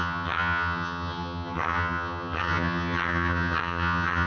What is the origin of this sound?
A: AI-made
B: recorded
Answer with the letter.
A